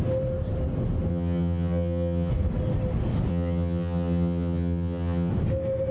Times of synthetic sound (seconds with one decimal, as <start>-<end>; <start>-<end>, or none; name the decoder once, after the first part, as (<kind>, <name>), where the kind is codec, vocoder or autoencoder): 1.1-2.3 (vocoder, HiFi-GAN); 3.3-5.3